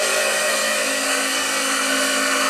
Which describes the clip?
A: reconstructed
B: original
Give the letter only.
A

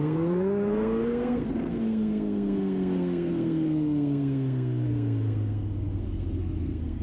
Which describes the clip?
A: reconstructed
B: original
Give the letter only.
A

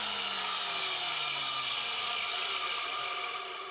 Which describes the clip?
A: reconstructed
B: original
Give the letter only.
B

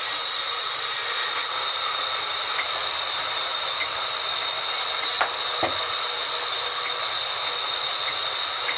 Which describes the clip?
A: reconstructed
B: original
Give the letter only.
B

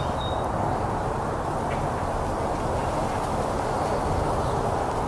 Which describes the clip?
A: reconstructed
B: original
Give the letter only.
B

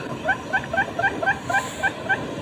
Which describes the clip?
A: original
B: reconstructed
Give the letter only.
A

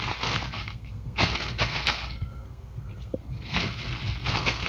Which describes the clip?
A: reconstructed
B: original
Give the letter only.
A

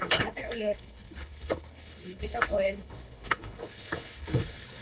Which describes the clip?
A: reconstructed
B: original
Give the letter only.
A